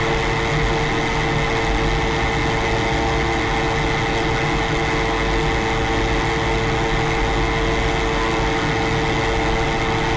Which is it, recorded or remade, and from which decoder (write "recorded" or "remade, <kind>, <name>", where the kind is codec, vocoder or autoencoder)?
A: recorded